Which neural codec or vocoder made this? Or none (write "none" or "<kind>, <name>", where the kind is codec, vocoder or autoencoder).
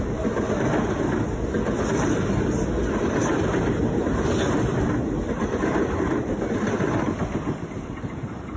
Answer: none